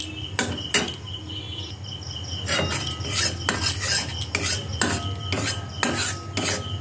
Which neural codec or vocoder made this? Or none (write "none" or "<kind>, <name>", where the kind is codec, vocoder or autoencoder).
none